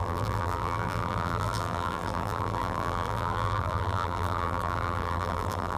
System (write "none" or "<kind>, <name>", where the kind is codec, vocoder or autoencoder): vocoder, BigVGAN v2